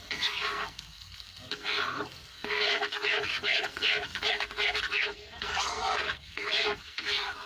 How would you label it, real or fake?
fake